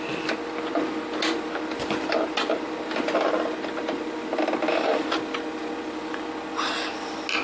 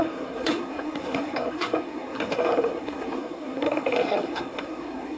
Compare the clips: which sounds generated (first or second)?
second